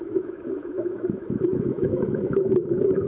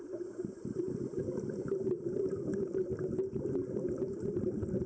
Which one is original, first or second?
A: second